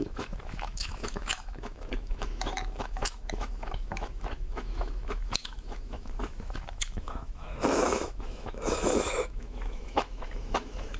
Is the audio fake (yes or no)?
yes